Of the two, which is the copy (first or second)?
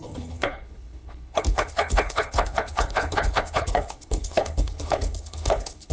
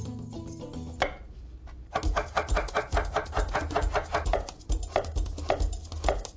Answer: first